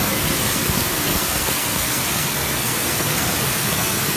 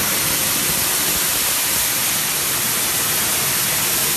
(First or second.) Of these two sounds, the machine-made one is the first